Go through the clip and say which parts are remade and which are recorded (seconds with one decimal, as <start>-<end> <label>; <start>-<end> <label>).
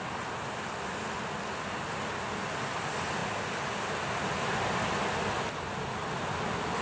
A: 0.0-6.8 recorded